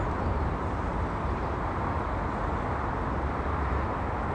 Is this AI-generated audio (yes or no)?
no